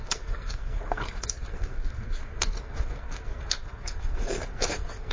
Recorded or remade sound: remade